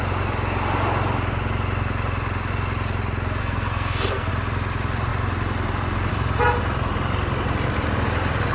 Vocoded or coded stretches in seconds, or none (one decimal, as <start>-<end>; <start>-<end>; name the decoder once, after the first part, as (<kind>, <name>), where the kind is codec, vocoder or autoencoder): 3.4-4.3 (codec, SNAC)